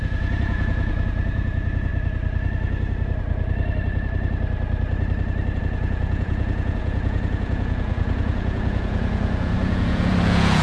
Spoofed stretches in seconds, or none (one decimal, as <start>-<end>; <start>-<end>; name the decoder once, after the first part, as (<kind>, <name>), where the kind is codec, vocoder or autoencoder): 0.0-1.9 (vocoder, Vocos); 5.6-10.6